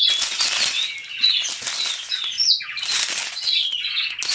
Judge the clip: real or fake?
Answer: real